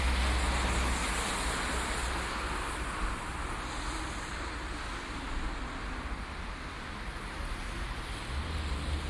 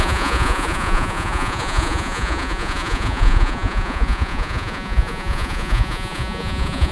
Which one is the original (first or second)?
first